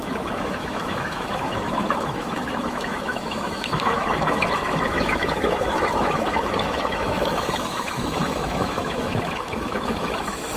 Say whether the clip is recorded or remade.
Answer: remade